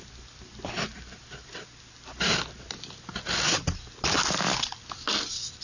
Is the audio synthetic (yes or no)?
no